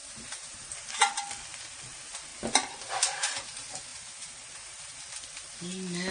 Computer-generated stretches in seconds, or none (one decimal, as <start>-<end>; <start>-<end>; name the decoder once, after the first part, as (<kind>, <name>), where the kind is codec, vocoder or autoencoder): 0.0-0.7 (vocoder, BigVGAN v2); 3.9-4.7